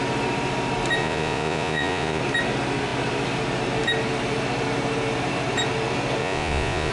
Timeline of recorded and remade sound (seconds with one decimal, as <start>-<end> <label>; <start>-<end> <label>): 0.0-1.0 recorded; 1.0-2.2 remade; 2.2-6.2 recorded; 6.2-6.9 remade